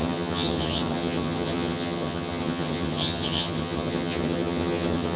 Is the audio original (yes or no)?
no